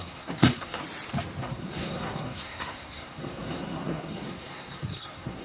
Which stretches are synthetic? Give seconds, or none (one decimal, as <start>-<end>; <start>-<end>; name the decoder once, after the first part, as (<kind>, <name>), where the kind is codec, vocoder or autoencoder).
0.0-0.8 (codec, SNAC); 1.4-5.4